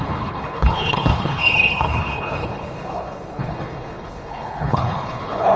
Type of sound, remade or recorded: remade